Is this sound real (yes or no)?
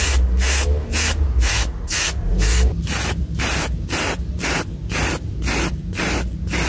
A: yes